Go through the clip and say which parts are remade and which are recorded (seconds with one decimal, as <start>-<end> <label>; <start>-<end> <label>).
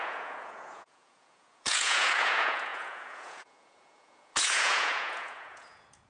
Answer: 0.0-6.1 remade